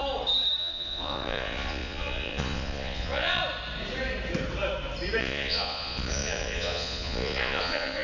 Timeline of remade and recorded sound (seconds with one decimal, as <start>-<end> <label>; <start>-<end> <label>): 0.0-0.6 recorded; 0.6-3.4 remade; 3.4-5.2 recorded; 5.2-8.0 remade